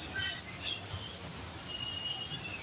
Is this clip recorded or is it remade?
recorded